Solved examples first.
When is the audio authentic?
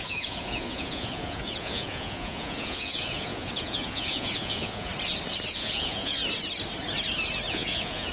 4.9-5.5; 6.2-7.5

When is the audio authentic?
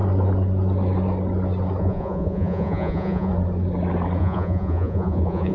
0.0-1.8; 3.3-4.2